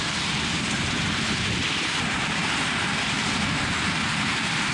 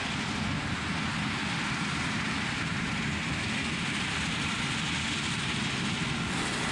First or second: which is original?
second